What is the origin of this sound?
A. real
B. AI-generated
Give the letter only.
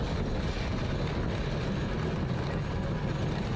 A